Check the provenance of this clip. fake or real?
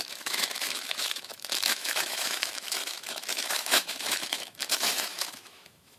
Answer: fake